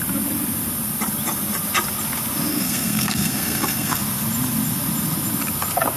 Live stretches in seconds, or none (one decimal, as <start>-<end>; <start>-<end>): 0.0-2.5; 4.0-6.0

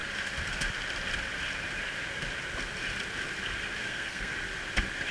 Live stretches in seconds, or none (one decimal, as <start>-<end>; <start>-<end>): 0.0-3.8; 4.3-5.1